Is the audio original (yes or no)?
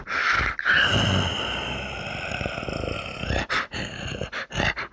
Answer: yes